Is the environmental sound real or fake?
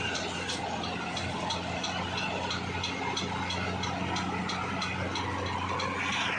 real